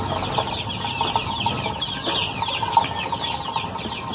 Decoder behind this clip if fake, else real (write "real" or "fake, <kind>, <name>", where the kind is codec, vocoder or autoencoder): real